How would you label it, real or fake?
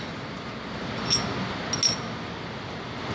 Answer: real